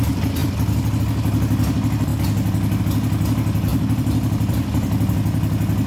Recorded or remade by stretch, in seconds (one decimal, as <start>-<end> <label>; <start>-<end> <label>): 0.0-0.4 recorded; 0.4-1.0 remade; 1.0-3.7 recorded; 3.7-5.1 remade; 5.1-5.9 recorded